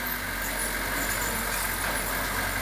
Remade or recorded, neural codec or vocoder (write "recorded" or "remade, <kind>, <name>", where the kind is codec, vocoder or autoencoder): recorded